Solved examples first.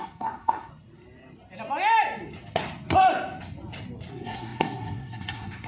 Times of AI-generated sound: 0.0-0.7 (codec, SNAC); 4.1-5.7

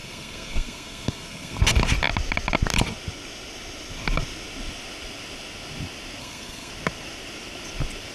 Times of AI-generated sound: 0.0-1.6 (codec, SNAC); 6.2-6.7

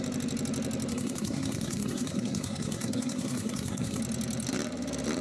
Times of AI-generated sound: 0.9-4.0 (codec, SNAC)

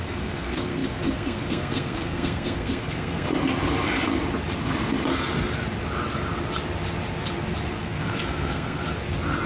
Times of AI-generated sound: 0.0-3.3 (codec, SNAC); 7.7-8.8

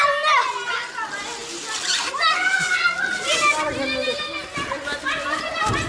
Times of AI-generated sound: none